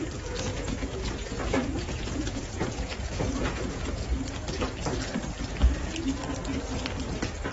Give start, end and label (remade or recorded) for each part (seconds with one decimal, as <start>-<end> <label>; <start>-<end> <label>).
0.0-0.5 recorded; 0.5-3.8 remade; 3.8-7.5 recorded